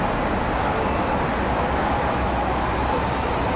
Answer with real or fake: real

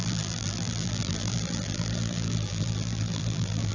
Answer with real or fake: fake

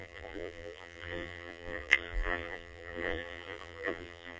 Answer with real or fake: fake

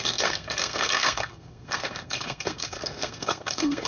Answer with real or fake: fake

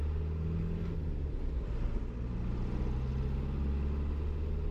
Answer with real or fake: real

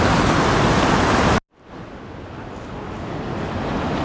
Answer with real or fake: real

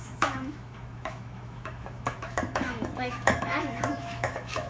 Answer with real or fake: fake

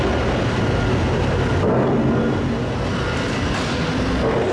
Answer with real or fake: real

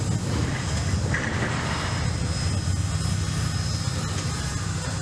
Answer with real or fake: real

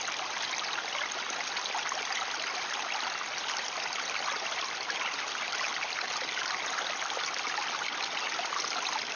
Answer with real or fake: real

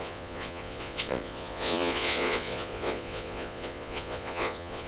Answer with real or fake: fake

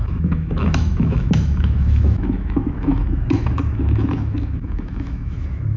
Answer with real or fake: fake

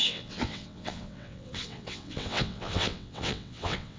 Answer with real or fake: fake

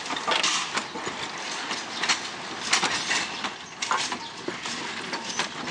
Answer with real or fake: real